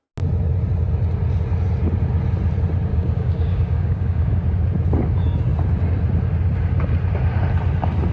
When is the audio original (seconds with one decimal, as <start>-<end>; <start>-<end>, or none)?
0.0-2.9; 4.3-8.1